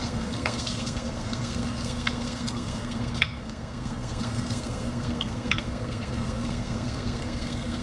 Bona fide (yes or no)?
no